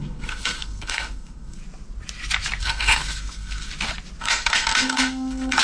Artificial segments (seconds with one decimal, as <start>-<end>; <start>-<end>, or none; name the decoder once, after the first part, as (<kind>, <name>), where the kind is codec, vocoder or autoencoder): 0.0-1.6 (codec, SNAC); 2.6-3.7; 4.2-5.6